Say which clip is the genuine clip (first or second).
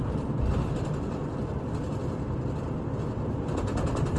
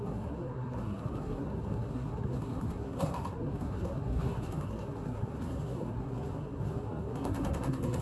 first